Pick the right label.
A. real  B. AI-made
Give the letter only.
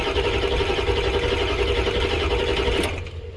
A